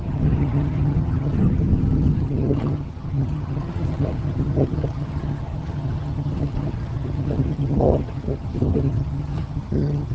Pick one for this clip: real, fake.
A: fake